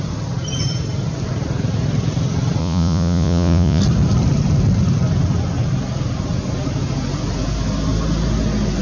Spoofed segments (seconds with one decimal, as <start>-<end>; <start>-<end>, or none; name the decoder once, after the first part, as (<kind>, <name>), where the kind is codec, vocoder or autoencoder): 2.6-3.8 (vocoder, Vocos)